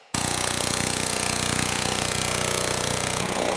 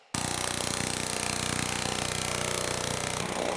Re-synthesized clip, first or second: first